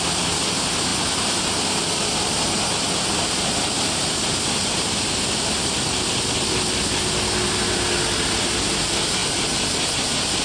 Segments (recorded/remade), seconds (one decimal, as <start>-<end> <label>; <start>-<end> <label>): 0.0-10.4 recorded